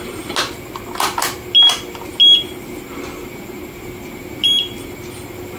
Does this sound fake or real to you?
real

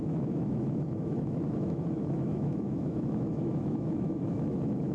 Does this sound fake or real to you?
fake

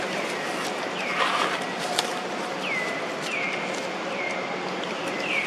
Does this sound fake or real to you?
real